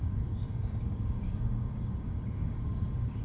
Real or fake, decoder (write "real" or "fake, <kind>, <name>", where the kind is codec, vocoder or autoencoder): fake, codec, DAC